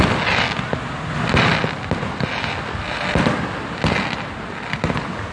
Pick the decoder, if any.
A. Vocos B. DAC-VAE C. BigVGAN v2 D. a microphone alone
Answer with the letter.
D